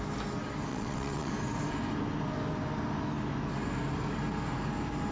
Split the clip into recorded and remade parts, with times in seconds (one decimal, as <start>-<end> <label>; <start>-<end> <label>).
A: 0.0-0.7 recorded; 0.7-1.3 remade; 1.3-5.1 recorded